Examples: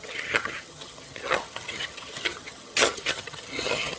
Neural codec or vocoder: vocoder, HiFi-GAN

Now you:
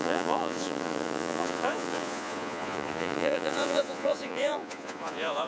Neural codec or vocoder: vocoder, Vocos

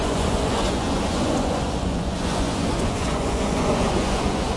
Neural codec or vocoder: vocoder, Vocos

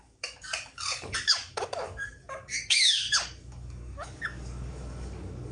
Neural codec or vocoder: codec, DAC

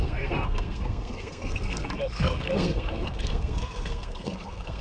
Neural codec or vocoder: codec, SNAC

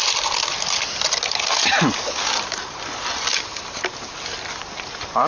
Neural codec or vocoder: none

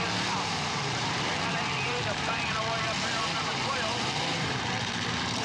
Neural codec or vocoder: vocoder, BigVGAN v2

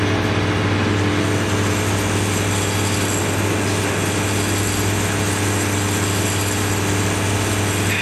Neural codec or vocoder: none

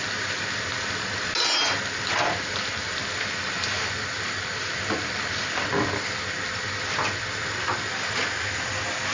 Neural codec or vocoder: none